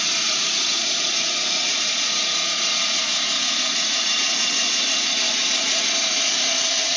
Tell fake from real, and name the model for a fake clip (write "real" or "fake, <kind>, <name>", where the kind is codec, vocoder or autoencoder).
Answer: fake, vocoder, Vocos